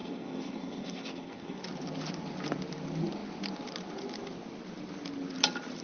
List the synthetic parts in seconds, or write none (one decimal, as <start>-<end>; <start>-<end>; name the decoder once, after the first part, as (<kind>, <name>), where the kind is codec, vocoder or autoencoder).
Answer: 0.0-1.6 (codec, SNAC)